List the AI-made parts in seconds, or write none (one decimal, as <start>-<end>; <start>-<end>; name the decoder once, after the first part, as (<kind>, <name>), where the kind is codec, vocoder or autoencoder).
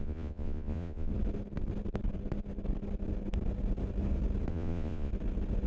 0.0-1.1 (vocoder, Vocos); 4.5-5.1